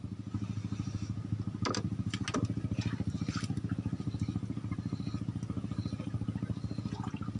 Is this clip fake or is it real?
real